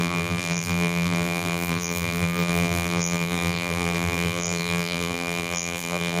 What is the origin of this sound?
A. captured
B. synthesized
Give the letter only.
B